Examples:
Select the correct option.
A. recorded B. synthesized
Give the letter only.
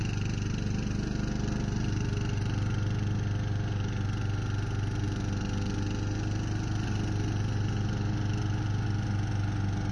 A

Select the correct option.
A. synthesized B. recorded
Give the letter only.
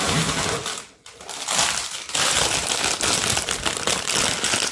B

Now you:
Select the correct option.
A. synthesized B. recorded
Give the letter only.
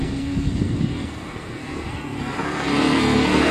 A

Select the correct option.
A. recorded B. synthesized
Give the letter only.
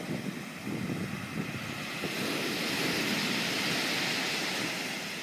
A